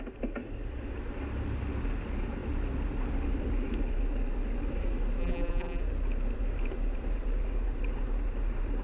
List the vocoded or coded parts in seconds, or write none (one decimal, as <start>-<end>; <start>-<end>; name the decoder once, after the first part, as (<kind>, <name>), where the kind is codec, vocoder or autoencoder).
5.2-5.8 (vocoder, BigVGAN v2)